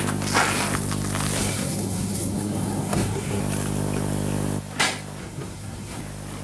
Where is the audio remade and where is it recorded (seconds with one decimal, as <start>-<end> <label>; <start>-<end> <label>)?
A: 0.0-1.4 recorded; 1.4-3.4 remade; 3.4-5.2 recorded; 5.2-6.0 remade; 6.0-6.4 recorded